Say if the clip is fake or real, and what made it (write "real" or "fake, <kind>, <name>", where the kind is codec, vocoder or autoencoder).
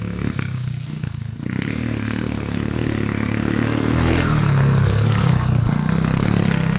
fake, codec, SNAC